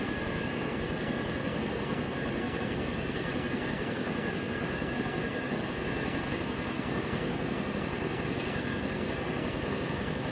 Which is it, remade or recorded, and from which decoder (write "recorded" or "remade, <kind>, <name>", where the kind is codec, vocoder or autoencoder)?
remade, codec, SNAC